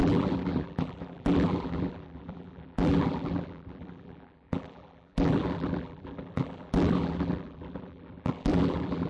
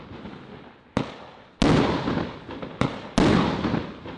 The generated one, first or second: first